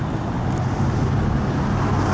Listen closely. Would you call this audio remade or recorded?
recorded